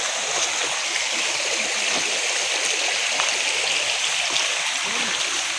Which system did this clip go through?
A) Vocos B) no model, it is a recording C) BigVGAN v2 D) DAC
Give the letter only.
B